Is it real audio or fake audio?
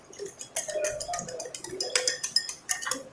real